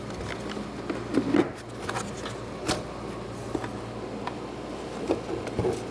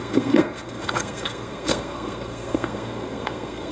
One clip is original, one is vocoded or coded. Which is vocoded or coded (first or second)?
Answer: second